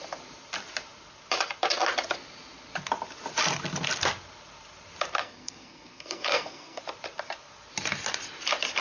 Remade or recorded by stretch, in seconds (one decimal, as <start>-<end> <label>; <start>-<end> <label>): 0.0-5.2 recorded; 5.2-6.8 remade; 6.8-8.8 recorded